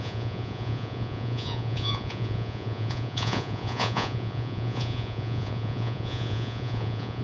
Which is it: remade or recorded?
remade